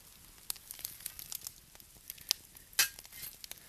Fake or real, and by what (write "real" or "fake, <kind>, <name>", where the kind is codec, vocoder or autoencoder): real